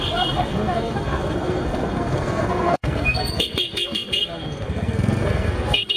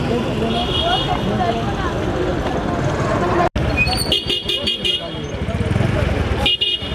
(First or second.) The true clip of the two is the second